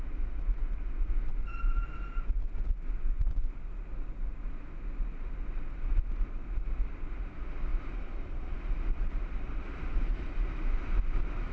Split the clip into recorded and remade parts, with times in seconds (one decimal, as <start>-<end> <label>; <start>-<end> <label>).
0.0-7.7 recorded; 7.7-9.1 remade; 9.1-11.5 recorded